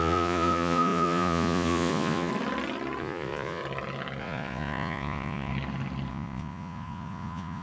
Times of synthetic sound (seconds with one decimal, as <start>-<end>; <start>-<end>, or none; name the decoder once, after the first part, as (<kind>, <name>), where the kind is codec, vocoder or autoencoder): 0.0-2.3 (vocoder, Vocos); 3.0-3.6; 4.2-5.5; 6.1-7.6